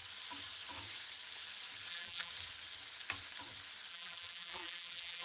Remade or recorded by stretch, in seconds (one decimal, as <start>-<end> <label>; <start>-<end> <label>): 0.0-1.9 recorded; 1.9-2.3 remade; 2.3-3.9 recorded; 3.9-5.2 remade